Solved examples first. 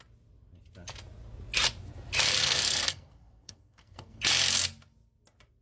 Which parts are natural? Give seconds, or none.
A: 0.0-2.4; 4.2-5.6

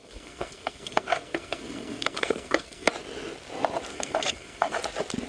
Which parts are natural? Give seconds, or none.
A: 2.9-3.9; 4.8-5.3

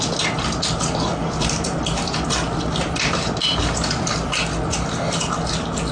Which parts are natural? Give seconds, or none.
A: 0.0-1.1; 4.6-5.9

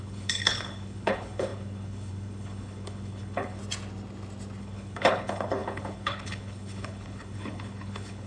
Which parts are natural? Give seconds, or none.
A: 3.6-4.6

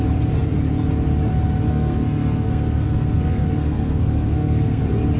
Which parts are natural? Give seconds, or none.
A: 0.0-1.7; 4.8-5.2

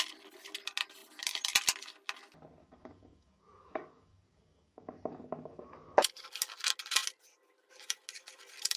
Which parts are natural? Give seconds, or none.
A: 0.0-2.6; 6.3-8.8

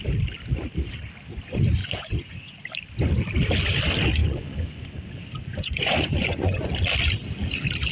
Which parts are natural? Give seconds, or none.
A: 0.0-1.8; 2.7-4.2; 5.0-5.5; 6.7-7.9